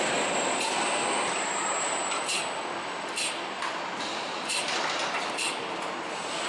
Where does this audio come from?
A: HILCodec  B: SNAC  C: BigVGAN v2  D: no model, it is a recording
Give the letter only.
D